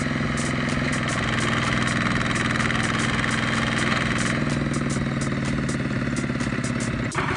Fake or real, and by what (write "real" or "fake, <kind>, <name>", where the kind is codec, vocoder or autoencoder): real